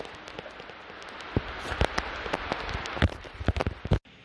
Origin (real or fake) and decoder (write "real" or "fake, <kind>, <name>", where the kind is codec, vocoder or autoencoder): real